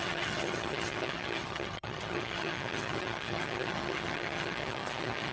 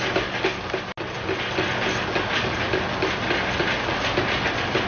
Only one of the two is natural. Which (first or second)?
second